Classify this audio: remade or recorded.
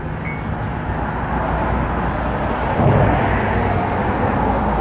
recorded